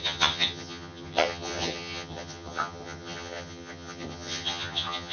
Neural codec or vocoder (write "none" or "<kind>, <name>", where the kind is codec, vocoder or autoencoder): vocoder, HiFi-GAN